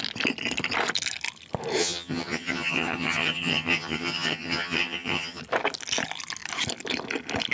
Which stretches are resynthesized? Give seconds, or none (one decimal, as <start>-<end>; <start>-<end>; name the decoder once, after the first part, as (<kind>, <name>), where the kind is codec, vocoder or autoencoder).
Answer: 1.8-5.4 (vocoder, HiFi-GAN)